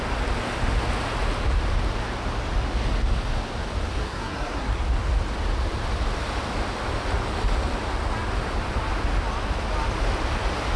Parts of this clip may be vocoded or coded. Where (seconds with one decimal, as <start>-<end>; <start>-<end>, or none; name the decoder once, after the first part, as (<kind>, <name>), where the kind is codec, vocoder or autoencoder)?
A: 4.0-4.8 (codec, SNAC)